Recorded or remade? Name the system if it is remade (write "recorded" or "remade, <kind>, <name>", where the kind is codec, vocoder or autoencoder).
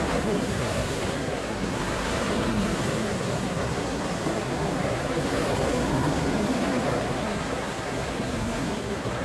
remade, codec, SNAC